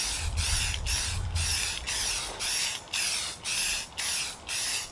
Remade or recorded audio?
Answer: recorded